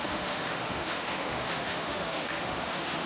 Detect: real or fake fake